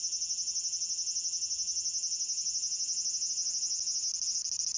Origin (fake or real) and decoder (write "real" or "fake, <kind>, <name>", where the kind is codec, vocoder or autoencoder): real